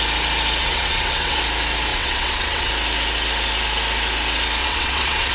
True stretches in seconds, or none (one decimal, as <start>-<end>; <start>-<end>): 0.0-0.6; 1.4-1.9; 2.7-4.6